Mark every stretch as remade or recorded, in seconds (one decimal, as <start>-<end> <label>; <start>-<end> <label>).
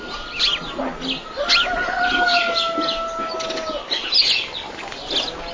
0.0-5.5 recorded